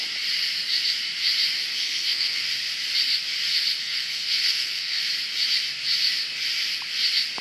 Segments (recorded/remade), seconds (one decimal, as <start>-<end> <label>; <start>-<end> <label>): 0.0-1.7 recorded; 1.7-2.4 remade; 2.4-3.8 recorded; 3.8-5.0 remade; 5.0-7.4 recorded